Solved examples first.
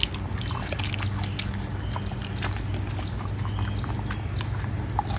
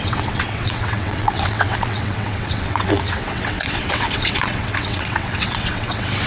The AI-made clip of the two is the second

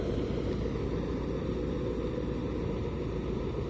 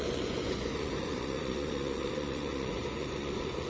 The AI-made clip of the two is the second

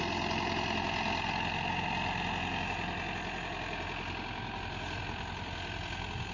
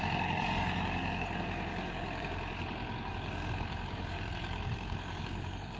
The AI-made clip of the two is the second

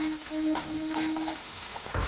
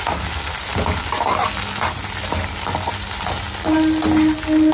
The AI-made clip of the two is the first